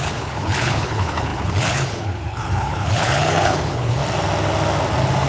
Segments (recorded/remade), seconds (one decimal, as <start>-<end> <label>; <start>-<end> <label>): 0.0-4.0 remade; 4.0-5.3 recorded